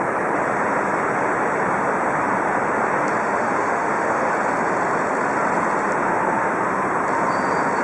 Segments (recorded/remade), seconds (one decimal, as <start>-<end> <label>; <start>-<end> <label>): 0.0-3.2 recorded; 3.2-4.3 remade; 4.3-7.8 recorded